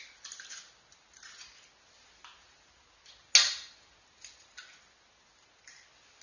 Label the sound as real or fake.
real